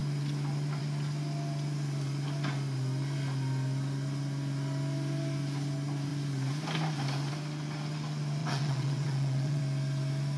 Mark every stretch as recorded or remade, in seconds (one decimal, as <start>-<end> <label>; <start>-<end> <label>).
0.0-8.4 recorded; 8.4-9.6 remade; 9.6-10.4 recorded